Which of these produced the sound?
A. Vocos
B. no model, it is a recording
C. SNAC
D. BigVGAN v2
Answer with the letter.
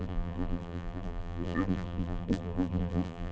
D